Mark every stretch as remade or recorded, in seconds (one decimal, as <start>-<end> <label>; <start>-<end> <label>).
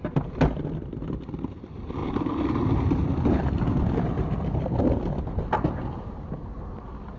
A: 0.0-7.2 recorded